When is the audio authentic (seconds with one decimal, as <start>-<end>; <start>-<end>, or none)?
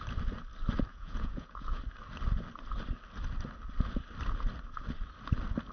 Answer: 0.0-0.9; 1.8-5.7